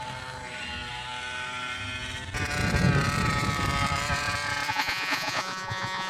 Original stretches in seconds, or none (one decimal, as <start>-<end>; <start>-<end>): 0.0-4.7